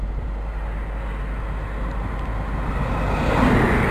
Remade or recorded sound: recorded